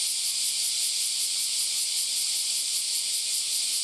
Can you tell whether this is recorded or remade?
remade